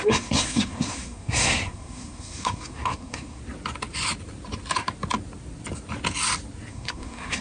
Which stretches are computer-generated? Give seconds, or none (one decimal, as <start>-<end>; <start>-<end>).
0.0-3.4; 6.7-7.4